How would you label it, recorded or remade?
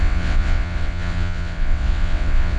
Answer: remade